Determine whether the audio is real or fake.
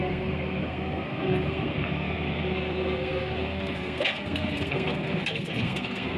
fake